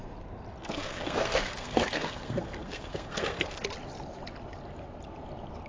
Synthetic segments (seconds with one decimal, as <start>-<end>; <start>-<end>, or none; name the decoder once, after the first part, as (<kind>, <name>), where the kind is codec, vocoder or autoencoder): 0.6-3.6 (codec, SNAC)